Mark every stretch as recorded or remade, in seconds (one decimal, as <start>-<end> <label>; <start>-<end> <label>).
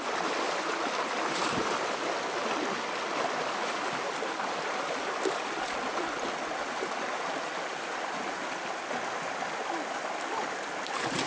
0.0-11.3 recorded